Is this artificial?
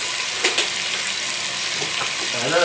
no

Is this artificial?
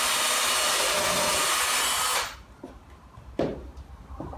no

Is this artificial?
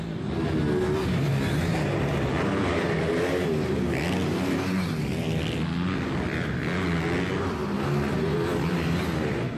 no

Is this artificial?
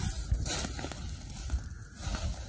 no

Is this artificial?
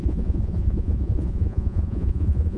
yes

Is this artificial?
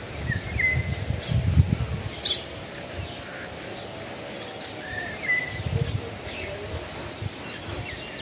no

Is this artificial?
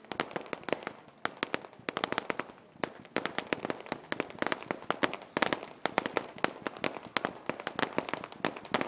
no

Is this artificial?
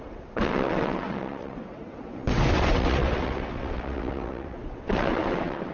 yes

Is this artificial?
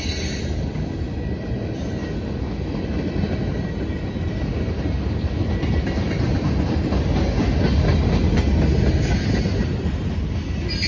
no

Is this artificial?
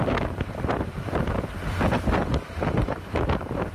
yes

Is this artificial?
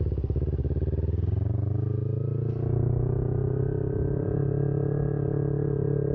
no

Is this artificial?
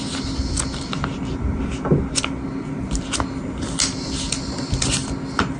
no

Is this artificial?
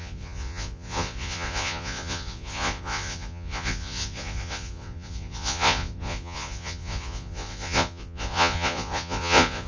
yes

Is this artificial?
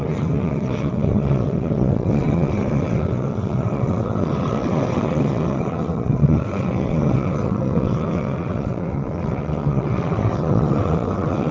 yes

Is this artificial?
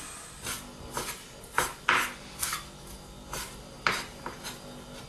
no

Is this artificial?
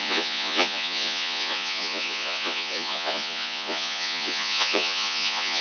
yes